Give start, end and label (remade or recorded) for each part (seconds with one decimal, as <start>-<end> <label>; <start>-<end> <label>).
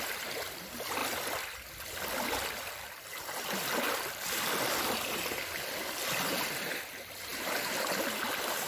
0.0-1.0 remade; 1.0-3.8 recorded; 3.8-8.7 remade